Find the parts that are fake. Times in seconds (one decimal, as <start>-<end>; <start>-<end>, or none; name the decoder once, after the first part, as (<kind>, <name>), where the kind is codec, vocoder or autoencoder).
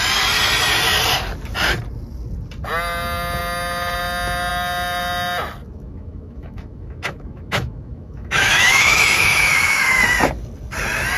5.6-10.0 (autoencoder, DAC-VAE)